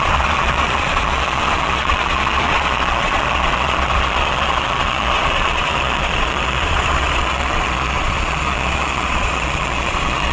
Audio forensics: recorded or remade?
remade